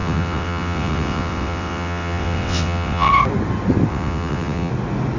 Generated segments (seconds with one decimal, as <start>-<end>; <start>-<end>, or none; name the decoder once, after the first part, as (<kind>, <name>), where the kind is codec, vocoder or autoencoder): 0.0-3.1 (vocoder, WaveNeXt); 3.9-4.7